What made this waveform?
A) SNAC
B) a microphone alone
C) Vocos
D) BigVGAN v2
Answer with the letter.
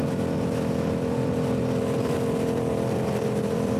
D